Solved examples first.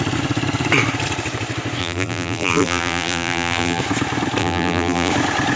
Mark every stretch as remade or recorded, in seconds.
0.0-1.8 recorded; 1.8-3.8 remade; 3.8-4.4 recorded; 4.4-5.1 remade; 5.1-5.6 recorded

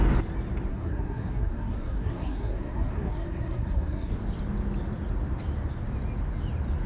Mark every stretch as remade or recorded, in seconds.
0.0-0.7 recorded; 0.7-4.1 remade; 4.1-6.9 recorded

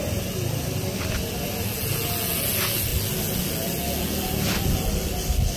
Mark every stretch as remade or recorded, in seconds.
0.0-5.6 recorded

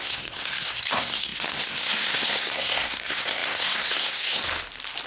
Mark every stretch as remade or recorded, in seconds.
0.0-4.4 remade; 4.4-5.1 recorded

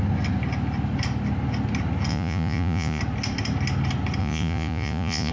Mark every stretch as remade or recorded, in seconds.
0.0-2.1 recorded; 2.1-3.0 remade; 3.0-4.2 recorded; 4.2-5.3 remade